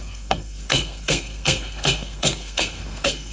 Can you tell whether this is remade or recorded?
remade